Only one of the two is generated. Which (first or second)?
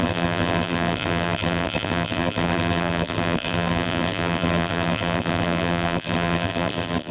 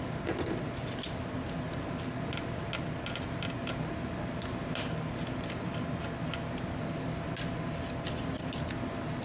first